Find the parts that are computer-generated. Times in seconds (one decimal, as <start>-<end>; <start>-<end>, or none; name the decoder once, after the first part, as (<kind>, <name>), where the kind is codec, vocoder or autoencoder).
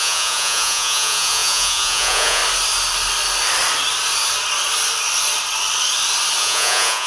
0.0-2.4 (vocoder, Vocos); 6.4-7.1